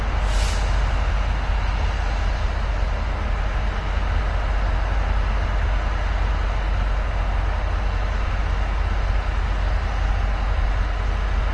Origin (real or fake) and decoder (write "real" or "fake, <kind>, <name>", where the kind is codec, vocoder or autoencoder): real